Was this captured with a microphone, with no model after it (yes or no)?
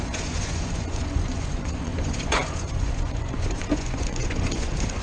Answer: no